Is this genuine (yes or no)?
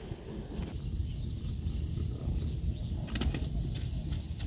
yes